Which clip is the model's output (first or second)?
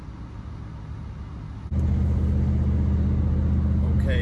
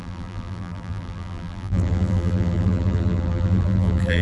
second